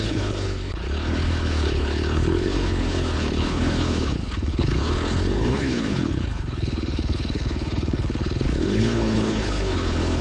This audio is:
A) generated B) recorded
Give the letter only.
A